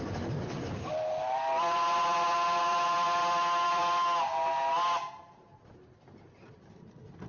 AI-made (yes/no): no